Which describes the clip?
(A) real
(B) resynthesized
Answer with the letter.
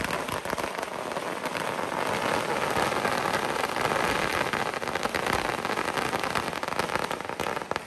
A